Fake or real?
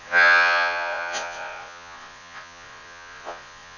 fake